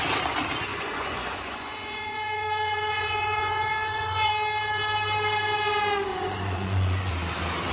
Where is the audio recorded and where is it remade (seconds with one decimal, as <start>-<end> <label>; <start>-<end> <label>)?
0.0-0.7 recorded; 0.7-4.3 remade; 4.3-6.1 recorded; 6.1-7.1 remade; 7.1-7.7 recorded